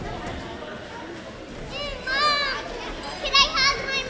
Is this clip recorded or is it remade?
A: recorded